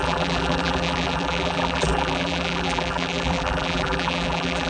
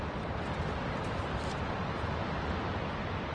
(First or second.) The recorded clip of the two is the second